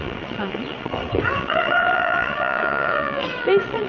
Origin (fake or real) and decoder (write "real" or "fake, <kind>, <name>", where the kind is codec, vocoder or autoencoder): fake, vocoder, WaveNeXt